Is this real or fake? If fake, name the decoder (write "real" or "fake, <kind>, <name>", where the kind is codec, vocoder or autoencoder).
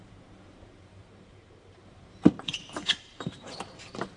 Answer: fake, vocoder, BigVGAN v2